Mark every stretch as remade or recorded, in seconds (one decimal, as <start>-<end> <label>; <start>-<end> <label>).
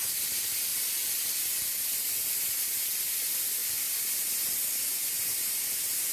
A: 0.0-0.7 recorded; 0.7-3.0 remade; 3.0-3.6 recorded; 3.6-4.2 remade; 4.2-6.1 recorded